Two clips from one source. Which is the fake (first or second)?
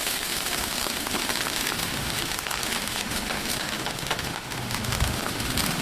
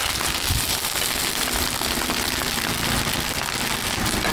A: first